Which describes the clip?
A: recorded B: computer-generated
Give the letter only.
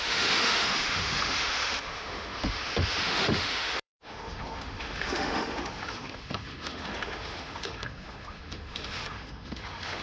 B